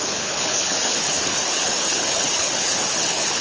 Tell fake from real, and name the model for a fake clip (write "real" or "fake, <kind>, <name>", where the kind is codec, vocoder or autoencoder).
fake, codec, HILCodec